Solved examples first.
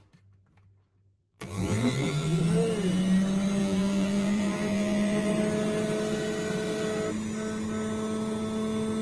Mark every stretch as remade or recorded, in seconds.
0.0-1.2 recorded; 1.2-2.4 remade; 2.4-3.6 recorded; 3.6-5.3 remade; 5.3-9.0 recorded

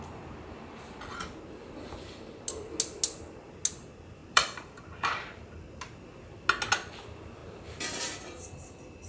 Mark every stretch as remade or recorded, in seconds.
0.0-4.2 recorded; 4.2-5.8 remade; 5.8-7.4 recorded; 7.4-8.4 remade; 8.4-9.1 recorded

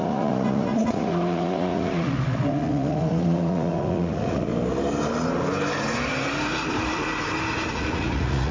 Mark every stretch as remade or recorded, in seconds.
0.0-4.5 remade; 4.5-7.7 recorded; 7.7-8.5 remade

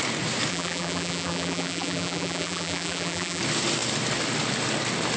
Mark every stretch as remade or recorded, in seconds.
0.0-0.5 recorded; 0.5-3.4 remade; 3.4-5.2 recorded

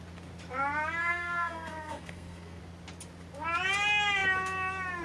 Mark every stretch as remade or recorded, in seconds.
0.0-1.0 recorded; 1.0-2.6 remade; 2.6-5.0 recorded